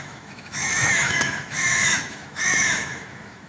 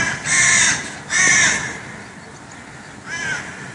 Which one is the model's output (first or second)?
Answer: first